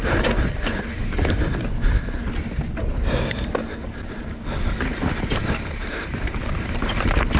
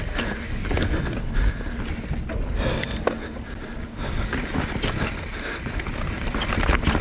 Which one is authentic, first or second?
second